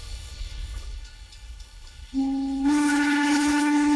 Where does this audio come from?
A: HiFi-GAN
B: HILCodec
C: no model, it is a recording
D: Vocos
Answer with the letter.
B